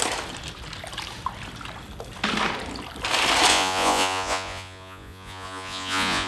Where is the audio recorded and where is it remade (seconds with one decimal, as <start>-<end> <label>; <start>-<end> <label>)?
0.0-3.5 recorded; 3.5-6.3 remade